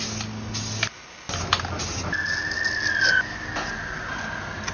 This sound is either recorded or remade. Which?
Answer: recorded